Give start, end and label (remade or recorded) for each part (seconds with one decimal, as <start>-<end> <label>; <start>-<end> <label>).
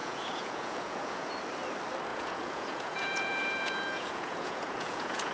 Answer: 0.0-1.3 remade; 1.3-2.1 recorded; 2.1-5.3 remade